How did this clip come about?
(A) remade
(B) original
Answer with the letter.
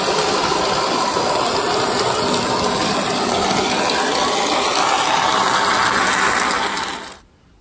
B